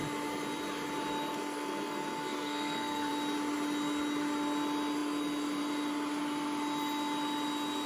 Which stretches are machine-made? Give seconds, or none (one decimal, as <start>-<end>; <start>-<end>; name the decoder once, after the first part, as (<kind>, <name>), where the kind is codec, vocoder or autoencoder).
1.3-3.1 (codec, SNAC)